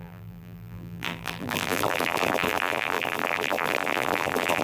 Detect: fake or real fake